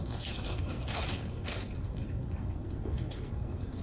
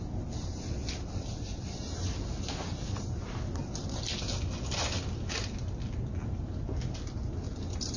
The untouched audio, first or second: second